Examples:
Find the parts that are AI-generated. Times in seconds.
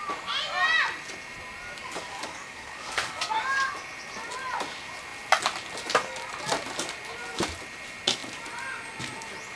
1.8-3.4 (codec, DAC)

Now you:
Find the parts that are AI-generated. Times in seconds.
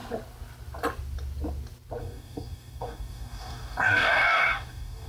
2.0-5.1 (codec, DAC)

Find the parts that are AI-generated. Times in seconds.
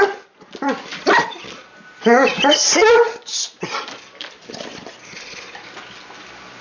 0.9-1.5 (vocoder, BigVGAN v2); 2.3-4.4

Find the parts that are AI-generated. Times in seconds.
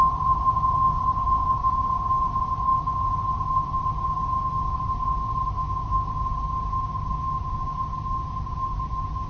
5.6-6.1 (autoencoder, DAC-VAE)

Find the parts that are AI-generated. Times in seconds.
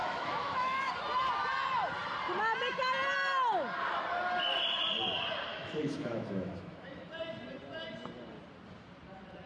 0.0-0.9 (autoencoder, DAC-VAE); 5.5-7.1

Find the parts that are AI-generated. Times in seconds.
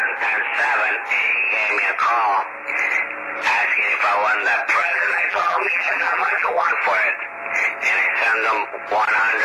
4.8-6.7 (vocoder, BigVGAN v2)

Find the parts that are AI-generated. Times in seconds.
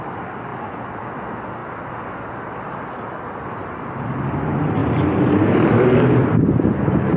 4.8-6.4 (vocoder, BigVGAN v2)